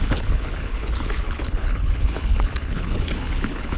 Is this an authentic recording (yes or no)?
no